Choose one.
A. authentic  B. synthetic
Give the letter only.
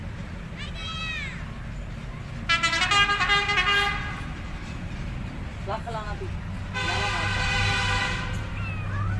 A